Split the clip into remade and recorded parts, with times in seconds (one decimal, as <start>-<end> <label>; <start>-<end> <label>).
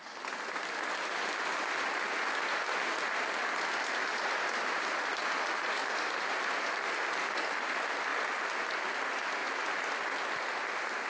0.0-11.1 recorded